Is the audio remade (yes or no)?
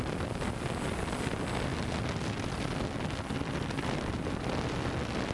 no